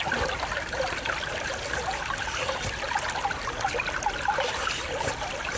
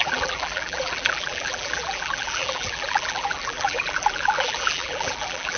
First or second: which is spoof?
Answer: second